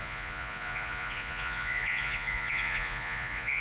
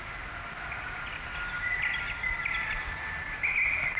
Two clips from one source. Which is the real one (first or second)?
second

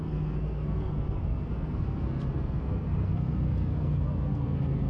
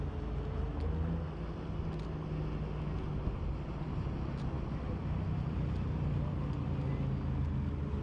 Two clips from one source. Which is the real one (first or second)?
second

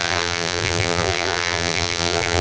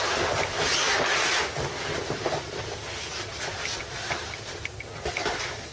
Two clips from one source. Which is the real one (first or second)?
second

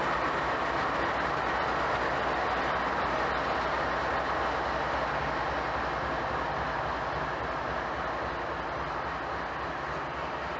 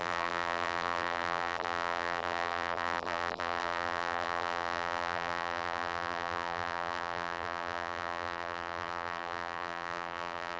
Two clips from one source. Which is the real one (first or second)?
first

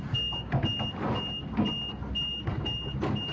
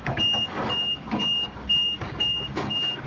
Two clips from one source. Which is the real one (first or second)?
first